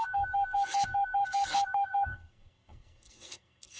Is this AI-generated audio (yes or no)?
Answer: yes